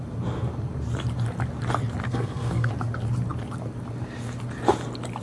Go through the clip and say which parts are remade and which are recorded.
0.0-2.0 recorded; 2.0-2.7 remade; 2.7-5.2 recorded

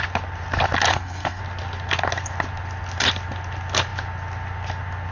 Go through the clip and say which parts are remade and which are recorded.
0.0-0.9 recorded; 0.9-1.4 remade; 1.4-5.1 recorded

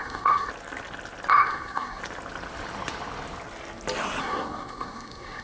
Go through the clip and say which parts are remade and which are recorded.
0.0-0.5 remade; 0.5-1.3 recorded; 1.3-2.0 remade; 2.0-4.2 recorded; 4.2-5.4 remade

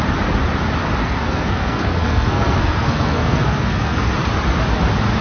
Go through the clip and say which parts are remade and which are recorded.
0.0-1.0 recorded; 1.0-4.1 remade; 4.1-5.2 recorded

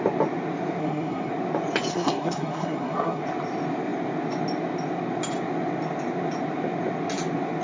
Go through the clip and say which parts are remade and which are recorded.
0.0-0.8 recorded; 0.8-1.3 remade; 1.3-1.9 recorded; 1.9-3.2 remade; 3.2-7.6 recorded

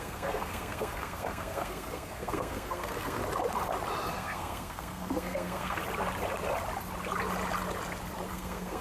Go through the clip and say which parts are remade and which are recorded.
0.0-3.2 remade; 3.2-4.1 recorded; 4.1-5.8 remade; 5.8-8.3 recorded; 8.3-8.8 remade

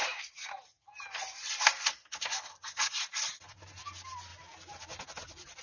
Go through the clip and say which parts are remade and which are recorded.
0.0-5.6 recorded